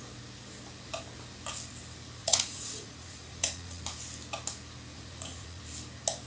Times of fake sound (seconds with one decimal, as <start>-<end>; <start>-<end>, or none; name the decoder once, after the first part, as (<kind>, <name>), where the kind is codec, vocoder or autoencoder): 2.2-3.8 (vocoder, Vocos); 4.9-5.6